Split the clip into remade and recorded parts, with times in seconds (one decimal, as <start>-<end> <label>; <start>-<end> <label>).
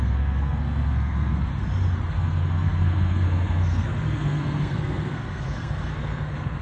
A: 0.0-1.5 remade; 1.5-2.1 recorded; 2.1-6.6 remade